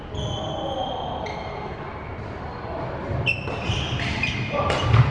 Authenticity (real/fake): real